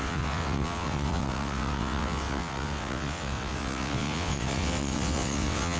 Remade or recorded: remade